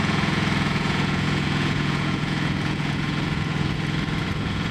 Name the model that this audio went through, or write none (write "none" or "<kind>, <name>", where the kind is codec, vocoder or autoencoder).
vocoder, Vocos